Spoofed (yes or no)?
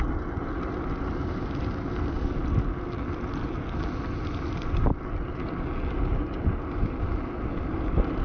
no